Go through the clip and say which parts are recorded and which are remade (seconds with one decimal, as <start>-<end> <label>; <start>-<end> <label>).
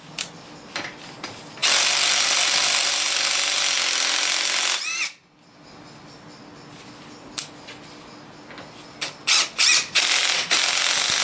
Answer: 0.0-11.2 recorded